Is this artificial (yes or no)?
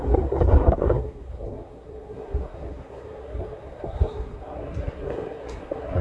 yes